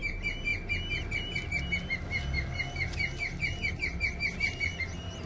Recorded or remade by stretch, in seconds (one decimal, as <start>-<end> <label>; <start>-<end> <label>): 0.0-0.5 remade; 0.5-3.7 recorded; 3.7-5.3 remade